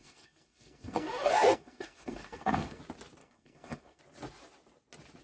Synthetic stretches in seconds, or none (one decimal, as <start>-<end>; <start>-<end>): 0.0-2.8; 3.2-4.0